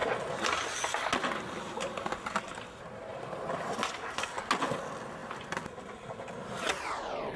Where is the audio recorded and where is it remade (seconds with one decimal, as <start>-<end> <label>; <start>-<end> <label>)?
0.0-7.4 recorded